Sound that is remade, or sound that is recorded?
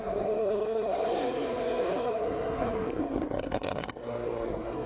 remade